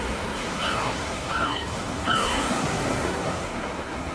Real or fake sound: fake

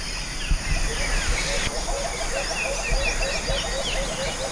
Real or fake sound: real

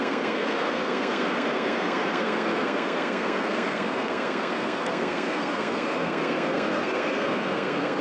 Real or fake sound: fake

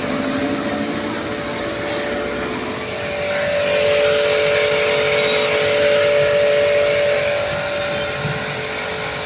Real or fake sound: real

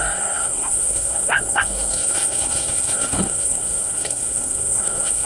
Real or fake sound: fake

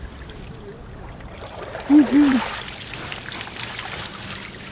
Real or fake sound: real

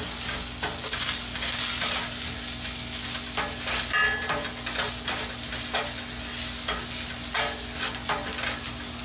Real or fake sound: real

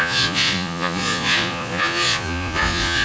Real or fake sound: fake